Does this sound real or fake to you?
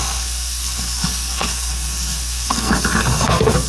fake